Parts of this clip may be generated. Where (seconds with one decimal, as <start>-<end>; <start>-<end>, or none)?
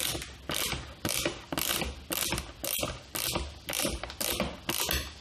none